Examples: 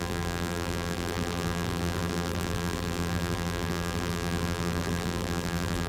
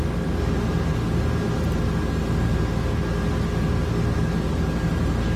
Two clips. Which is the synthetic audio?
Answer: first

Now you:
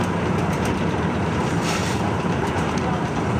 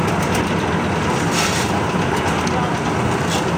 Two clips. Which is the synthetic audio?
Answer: first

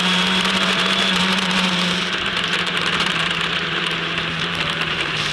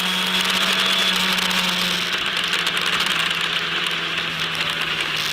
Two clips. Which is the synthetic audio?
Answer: first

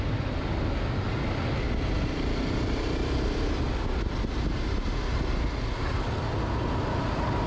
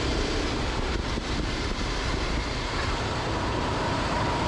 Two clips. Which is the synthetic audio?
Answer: second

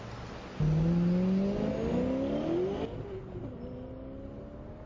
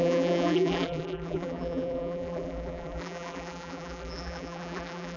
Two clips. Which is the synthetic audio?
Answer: second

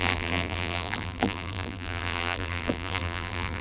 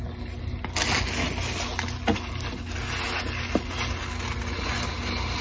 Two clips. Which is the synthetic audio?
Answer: first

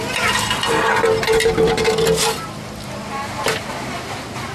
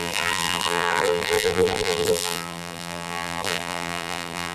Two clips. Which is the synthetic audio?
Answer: second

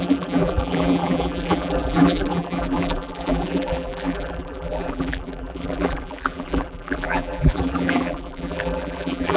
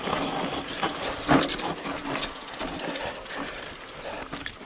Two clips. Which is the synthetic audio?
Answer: first